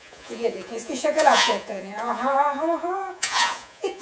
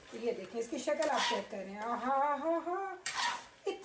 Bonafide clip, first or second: second